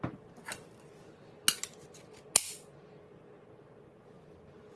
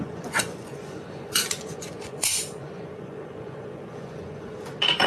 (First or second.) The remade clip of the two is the second